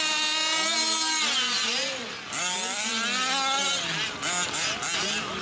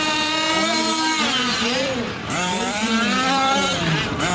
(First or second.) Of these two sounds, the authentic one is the first